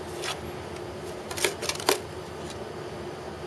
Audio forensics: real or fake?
real